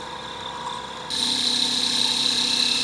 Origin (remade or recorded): recorded